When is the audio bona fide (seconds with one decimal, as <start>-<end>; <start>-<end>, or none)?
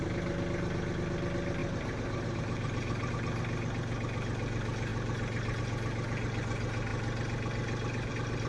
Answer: 0.0-1.6; 3.1-8.5